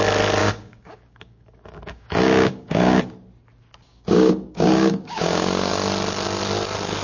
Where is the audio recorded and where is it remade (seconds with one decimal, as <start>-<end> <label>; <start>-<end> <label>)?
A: 0.0-0.4 recorded; 0.4-3.0 remade; 3.0-3.9 recorded; 3.9-5.7 remade; 5.7-7.0 recorded